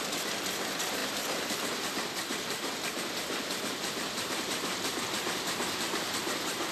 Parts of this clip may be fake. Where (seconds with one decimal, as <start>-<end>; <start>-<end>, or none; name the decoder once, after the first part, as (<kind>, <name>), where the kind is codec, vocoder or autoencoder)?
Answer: 0.0-6.7 (vocoder, BigVGAN v2)